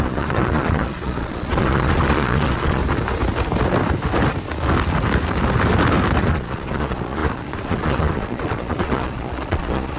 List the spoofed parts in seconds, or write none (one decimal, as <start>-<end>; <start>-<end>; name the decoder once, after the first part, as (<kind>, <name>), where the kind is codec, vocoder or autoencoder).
0.0-2.8 (vocoder, Vocos); 6.2-10.0